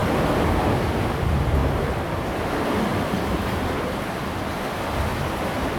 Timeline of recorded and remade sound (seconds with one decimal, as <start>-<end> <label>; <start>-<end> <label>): 0.0-1.6 recorded; 1.6-2.4 remade; 2.4-2.9 recorded; 2.9-3.4 remade; 3.4-5.1 recorded; 5.1-5.8 remade